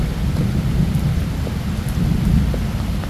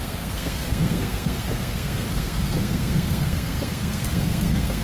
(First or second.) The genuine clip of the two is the first